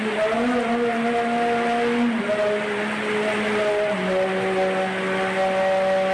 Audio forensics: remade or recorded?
recorded